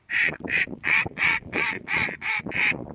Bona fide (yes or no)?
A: no